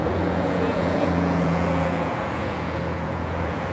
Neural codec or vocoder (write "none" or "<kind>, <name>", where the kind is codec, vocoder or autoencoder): vocoder, Vocos